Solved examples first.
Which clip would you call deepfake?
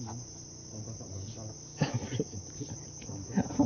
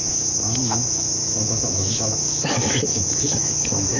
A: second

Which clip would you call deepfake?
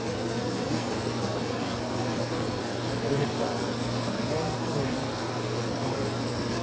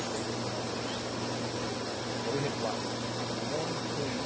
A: first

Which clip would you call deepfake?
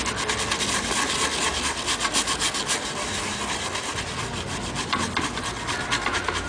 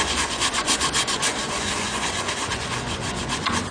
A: second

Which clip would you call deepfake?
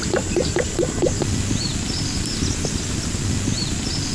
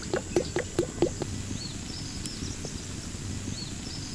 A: first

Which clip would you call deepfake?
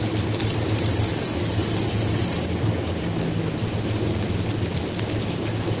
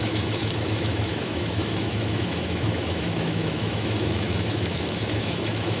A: second